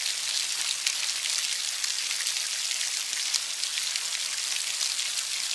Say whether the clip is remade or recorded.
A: recorded